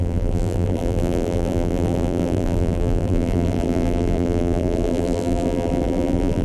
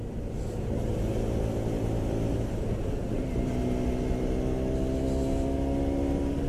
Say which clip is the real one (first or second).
second